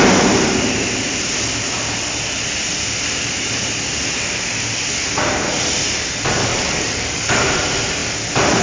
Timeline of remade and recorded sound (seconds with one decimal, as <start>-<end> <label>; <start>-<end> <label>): 0.0-6.5 recorded; 6.5-7.4 remade; 7.4-8.6 recorded